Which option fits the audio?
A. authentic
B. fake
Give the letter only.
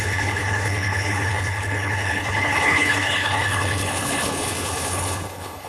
B